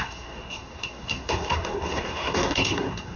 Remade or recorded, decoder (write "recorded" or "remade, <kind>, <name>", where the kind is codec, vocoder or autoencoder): remade, codec, SNAC